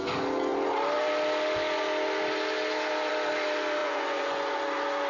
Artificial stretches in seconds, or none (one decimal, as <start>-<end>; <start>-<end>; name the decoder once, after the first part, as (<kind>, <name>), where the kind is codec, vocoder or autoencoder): 3.8-4.5 (vocoder, Vocos)